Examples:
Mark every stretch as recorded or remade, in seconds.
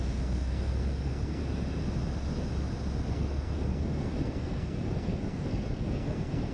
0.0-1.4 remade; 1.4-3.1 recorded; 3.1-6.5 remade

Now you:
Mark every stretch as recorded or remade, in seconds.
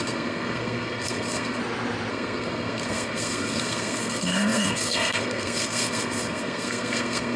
0.0-1.6 remade; 1.6-2.1 recorded; 2.1-7.4 remade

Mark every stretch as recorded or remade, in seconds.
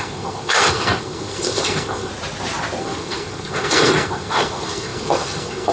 0.0-2.1 remade; 2.1-2.8 recorded; 2.8-5.7 remade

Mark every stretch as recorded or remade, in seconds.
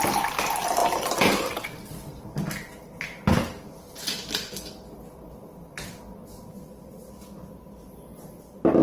0.0-8.8 recorded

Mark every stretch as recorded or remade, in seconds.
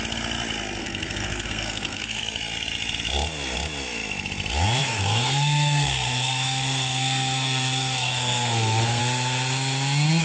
0.0-0.8 recorded; 0.8-2.2 remade; 2.2-4.8 recorded; 4.8-9.0 remade; 9.0-10.2 recorded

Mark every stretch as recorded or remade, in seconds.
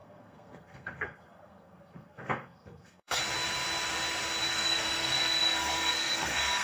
0.0-3.2 remade; 3.2-4.5 recorded; 4.5-6.6 remade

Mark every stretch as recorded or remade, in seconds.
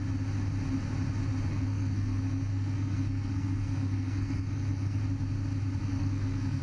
0.0-1.5 recorded; 1.5-5.0 remade; 5.0-5.8 recorded; 5.8-6.6 remade